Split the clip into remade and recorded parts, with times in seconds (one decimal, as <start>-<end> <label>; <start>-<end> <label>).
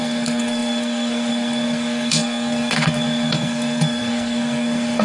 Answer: 0.0-5.0 remade